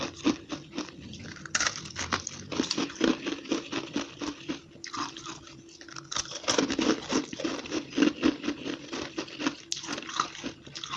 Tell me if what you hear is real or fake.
real